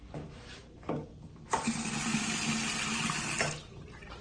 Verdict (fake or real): real